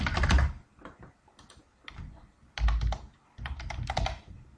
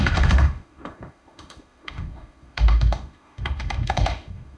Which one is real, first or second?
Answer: first